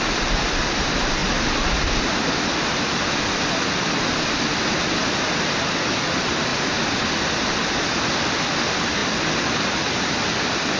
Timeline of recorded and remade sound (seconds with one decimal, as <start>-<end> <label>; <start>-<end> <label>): 0.0-10.8 recorded

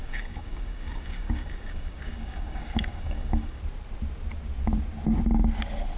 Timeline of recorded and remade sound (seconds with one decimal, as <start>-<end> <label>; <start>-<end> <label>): 0.0-3.6 remade; 3.6-6.0 recorded

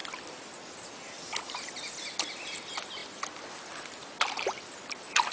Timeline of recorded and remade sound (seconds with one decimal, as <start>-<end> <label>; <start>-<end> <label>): 0.0-5.3 recorded

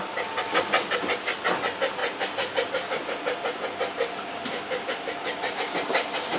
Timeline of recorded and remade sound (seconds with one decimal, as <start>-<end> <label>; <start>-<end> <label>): 0.0-6.4 recorded

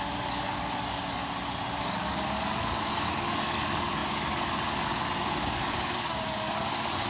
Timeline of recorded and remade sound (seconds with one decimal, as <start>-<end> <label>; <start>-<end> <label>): 0.0-1.2 remade; 1.2-1.8 recorded; 1.8-7.1 remade

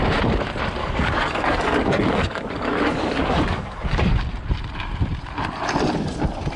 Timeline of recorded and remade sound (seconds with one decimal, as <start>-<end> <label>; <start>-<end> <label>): 0.0-0.8 recorded; 0.8-4.1 remade; 4.1-6.6 recorded

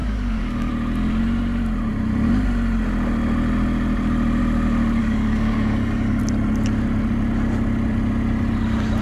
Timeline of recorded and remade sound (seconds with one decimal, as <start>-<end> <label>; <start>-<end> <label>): 0.0-0.7 remade; 0.7-5.0 recorded; 5.0-6.2 remade; 6.2-9.0 recorded